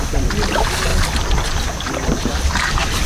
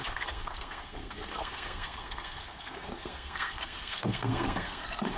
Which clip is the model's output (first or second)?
second